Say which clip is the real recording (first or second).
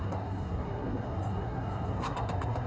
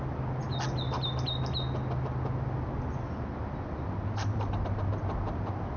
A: second